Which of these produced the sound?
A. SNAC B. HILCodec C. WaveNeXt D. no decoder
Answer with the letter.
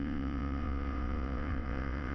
C